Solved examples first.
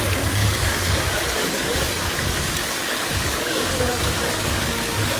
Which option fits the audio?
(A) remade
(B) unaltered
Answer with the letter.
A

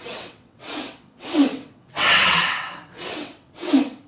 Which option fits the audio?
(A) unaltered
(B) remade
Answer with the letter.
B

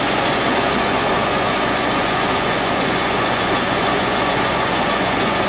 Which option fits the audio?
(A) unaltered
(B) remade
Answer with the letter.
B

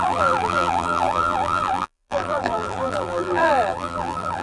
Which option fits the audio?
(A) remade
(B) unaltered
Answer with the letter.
A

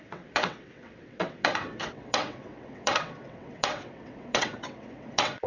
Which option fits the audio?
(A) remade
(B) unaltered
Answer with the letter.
A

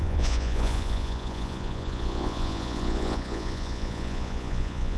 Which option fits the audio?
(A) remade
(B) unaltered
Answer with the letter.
A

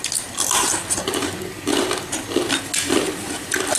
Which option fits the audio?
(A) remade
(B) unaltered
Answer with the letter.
B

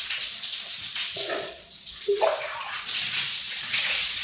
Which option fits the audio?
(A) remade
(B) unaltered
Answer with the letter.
A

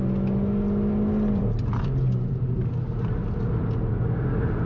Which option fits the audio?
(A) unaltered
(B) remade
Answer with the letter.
A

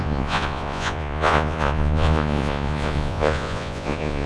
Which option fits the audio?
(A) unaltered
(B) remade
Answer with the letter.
B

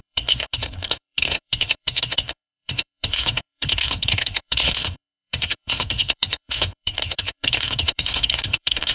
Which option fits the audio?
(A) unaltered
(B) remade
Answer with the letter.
B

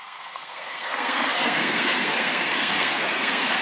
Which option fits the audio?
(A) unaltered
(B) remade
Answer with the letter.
B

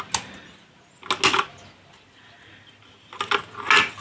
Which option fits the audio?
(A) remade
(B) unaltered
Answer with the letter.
B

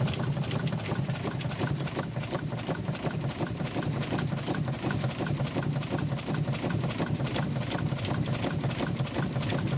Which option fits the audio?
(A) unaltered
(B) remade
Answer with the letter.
B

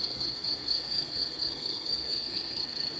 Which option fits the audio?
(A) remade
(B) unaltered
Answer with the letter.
A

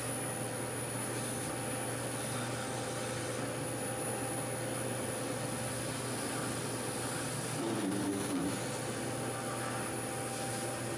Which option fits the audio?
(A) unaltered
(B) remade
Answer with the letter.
A